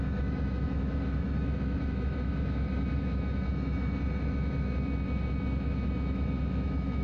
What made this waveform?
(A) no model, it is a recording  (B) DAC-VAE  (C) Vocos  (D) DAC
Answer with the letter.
B